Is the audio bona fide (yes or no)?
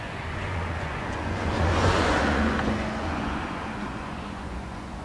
no